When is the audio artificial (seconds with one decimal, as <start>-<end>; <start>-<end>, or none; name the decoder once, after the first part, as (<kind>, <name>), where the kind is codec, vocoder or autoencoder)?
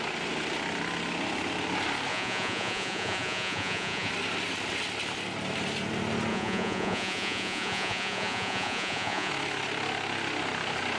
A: 2.1-4.1 (vocoder, Vocos); 6.3-9.3